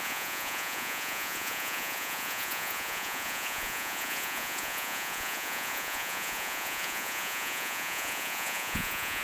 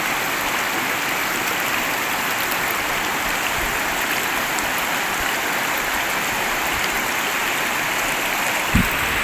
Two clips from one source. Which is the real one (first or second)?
second